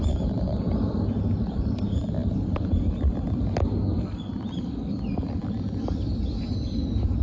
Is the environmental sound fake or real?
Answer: fake